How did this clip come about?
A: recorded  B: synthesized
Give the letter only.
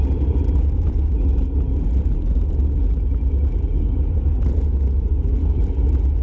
A